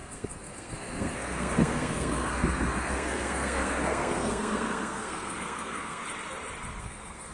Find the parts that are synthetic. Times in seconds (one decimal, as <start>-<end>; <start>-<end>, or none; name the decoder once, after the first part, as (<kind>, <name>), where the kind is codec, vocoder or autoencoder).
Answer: 0.0-6.0 (codec, SNAC); 6.8-7.3